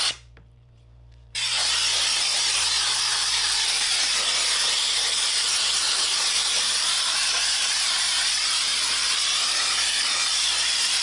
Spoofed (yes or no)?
yes